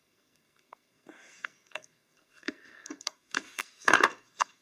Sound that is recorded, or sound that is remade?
remade